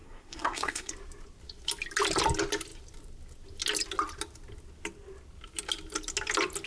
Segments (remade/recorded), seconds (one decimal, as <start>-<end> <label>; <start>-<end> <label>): 0.0-0.9 remade; 0.9-6.7 recorded